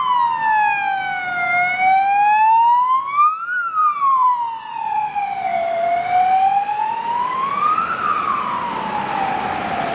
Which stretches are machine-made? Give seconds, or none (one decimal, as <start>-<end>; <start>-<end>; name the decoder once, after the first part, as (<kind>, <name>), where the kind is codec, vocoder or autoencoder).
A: 3.8-6.0 (vocoder, BigVGAN v2)